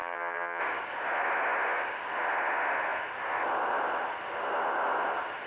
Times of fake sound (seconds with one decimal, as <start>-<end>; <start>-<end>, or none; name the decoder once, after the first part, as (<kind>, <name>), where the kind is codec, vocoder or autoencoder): 0.0-0.6 (vocoder, HiFi-GAN)